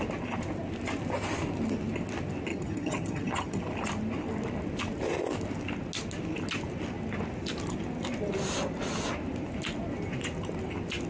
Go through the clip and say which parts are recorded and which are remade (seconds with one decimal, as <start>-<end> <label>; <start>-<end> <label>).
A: 0.0-2.5 recorded; 2.5-3.6 remade; 3.6-11.1 recorded